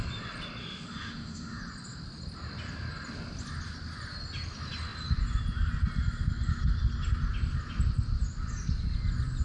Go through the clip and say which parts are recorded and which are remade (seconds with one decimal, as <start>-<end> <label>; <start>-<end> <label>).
0.0-0.6 recorded; 0.6-1.6 remade; 1.6-9.4 recorded